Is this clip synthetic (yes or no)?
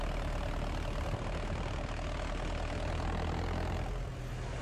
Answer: no